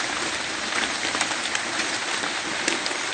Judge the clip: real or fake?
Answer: real